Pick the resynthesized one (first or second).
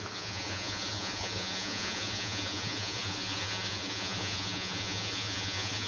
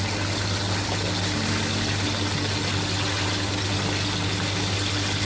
first